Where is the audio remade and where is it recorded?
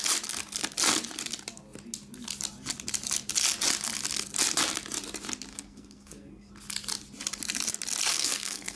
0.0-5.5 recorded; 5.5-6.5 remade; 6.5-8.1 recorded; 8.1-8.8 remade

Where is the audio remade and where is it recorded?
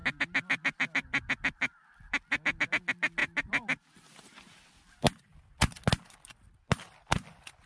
0.0-7.7 recorded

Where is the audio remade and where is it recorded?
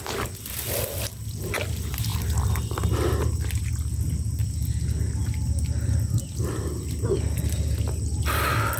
0.0-8.8 recorded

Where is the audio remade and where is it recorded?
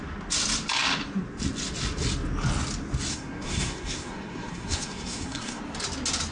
0.0-3.1 recorded; 3.1-5.6 remade; 5.6-6.3 recorded